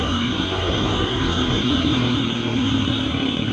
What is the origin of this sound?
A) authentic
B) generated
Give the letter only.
B